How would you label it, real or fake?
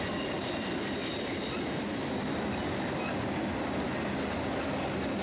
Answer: real